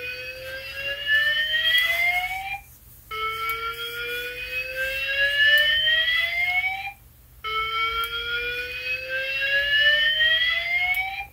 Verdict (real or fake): real